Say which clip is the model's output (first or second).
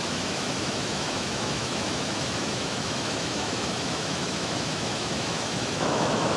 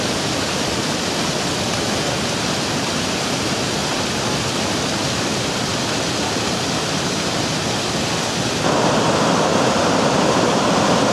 first